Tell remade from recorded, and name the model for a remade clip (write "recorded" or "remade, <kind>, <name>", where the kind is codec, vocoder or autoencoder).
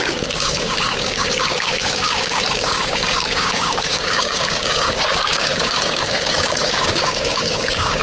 remade, codec, DAC